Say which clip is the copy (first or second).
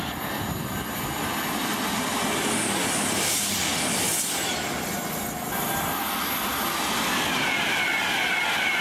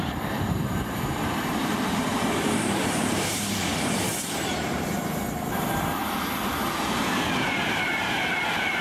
second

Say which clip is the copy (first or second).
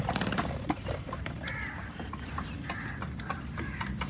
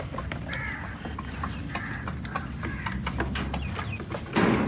first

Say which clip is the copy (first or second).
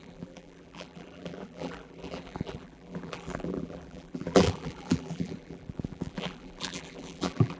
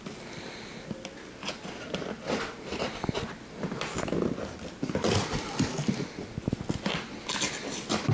first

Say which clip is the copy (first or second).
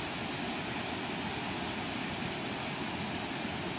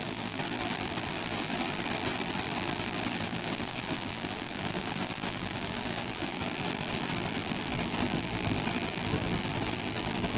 second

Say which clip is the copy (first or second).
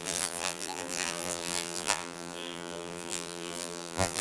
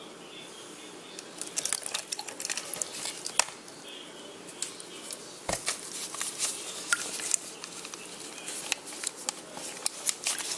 first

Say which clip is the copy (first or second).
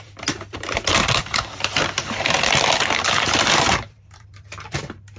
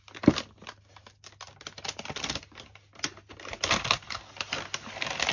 first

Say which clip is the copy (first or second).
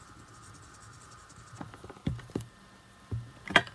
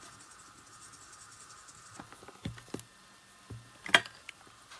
first